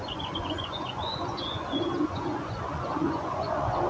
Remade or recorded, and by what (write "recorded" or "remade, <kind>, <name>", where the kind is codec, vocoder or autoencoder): remade, vocoder, Vocos